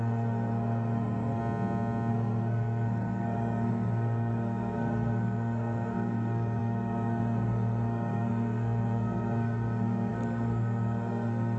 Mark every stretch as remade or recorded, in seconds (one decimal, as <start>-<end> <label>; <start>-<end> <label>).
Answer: 0.0-1.4 remade; 1.4-2.1 recorded; 2.1-11.6 remade